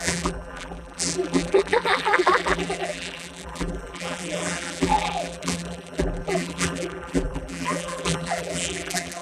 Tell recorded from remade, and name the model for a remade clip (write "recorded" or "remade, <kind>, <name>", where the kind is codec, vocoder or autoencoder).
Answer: remade, vocoder, BigVGAN v2